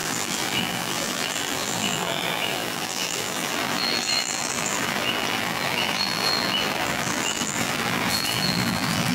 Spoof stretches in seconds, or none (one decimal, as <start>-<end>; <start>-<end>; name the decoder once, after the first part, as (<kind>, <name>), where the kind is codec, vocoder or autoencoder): 0.0-9.1 (vocoder, BigVGAN v2)